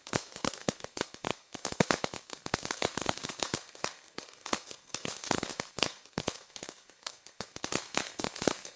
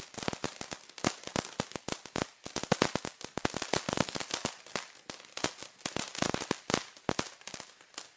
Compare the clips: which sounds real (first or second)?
second